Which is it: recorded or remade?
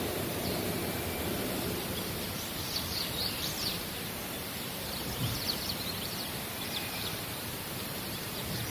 remade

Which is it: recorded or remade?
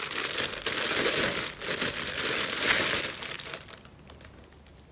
recorded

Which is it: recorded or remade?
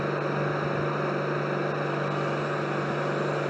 recorded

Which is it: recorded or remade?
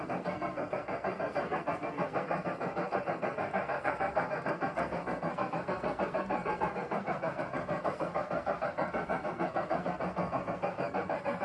remade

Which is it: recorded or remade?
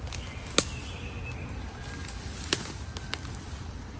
recorded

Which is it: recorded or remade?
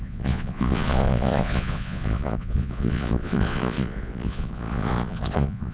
remade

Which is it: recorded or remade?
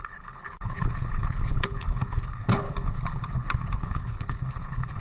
remade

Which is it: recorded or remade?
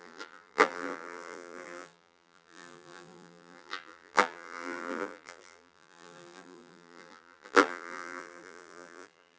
remade